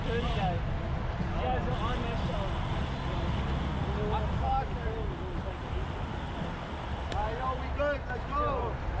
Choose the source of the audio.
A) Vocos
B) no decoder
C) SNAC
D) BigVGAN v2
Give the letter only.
B